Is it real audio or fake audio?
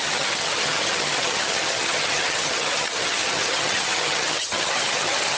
fake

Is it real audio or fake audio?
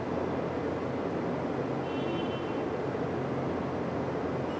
real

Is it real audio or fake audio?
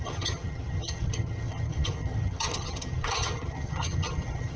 fake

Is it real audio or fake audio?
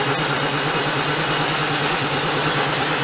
real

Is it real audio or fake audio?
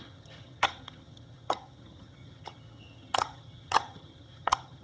fake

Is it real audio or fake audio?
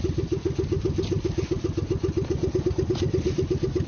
real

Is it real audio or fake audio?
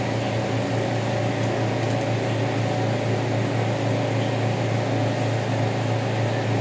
real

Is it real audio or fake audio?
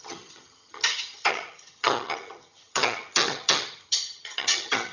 fake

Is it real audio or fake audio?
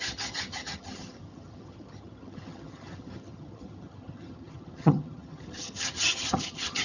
fake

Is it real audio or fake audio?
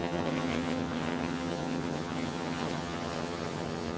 fake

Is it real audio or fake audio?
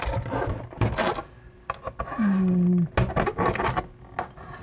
real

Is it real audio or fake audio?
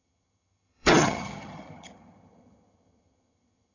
fake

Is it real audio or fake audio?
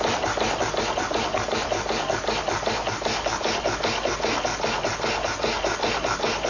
real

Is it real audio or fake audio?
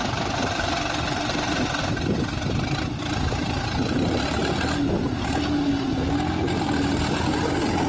real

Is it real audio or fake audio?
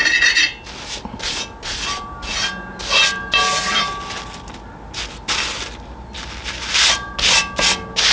real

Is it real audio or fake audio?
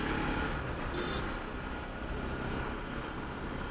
real